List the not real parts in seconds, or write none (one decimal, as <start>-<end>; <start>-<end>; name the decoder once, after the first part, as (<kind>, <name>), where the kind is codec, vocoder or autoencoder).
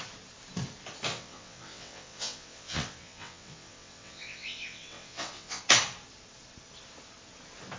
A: 1.1-5.6 (vocoder, WaveNeXt)